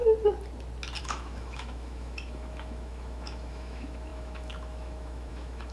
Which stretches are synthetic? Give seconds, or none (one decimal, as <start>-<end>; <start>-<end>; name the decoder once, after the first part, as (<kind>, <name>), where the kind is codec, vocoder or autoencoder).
1.0-5.7 (autoencoder, DAC-VAE)